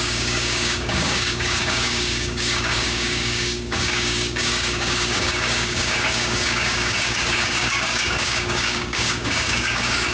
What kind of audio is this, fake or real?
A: fake